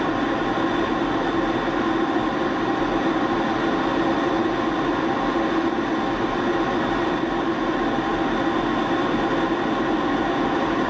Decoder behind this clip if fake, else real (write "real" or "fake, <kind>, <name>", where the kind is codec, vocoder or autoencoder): real